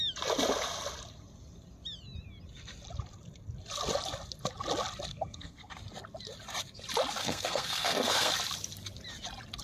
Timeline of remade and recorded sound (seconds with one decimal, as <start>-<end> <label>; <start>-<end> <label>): 0.0-5.1 recorded; 5.1-5.7 remade; 5.7-7.2 recorded; 7.2-8.3 remade; 8.3-9.6 recorded